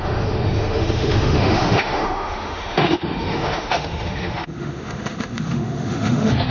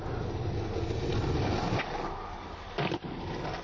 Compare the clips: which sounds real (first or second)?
second